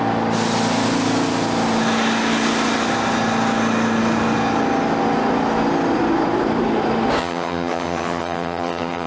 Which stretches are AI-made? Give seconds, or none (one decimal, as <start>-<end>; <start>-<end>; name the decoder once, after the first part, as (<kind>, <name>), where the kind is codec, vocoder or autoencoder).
7.2-9.1 (vocoder, HiFi-GAN)